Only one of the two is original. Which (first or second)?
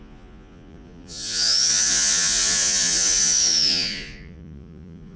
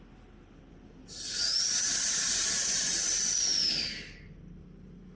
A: second